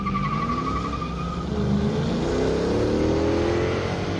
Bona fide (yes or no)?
yes